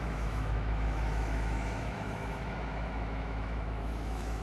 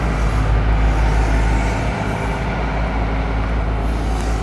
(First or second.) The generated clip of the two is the first